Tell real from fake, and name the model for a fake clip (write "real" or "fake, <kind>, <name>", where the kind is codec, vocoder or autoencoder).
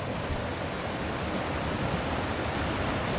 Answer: real